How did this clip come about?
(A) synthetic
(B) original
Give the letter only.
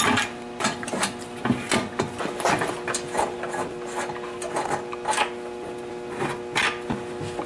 B